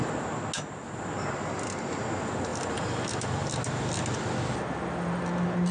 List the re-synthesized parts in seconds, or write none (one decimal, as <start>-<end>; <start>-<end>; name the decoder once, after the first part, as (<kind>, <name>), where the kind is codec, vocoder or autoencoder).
none